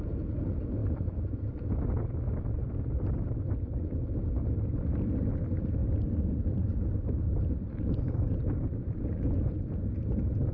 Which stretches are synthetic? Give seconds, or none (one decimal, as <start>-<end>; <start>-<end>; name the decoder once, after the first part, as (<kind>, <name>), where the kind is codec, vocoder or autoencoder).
5.8-9.7 (vocoder, BigVGAN v2)